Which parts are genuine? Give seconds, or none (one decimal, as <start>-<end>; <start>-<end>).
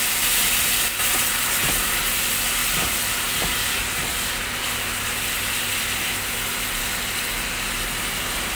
0.0-8.6